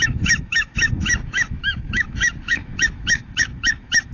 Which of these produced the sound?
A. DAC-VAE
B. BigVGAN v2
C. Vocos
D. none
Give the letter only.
A